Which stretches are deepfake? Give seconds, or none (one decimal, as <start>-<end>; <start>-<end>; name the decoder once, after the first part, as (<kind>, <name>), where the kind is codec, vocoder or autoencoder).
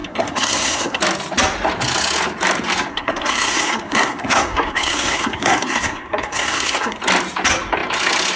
0.0-1.0 (codec, SNAC); 2.9-7.0